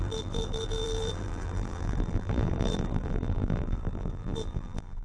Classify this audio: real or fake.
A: fake